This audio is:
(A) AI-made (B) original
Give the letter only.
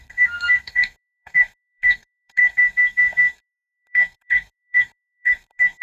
A